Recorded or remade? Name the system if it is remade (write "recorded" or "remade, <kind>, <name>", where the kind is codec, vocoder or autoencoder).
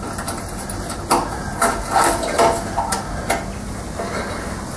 recorded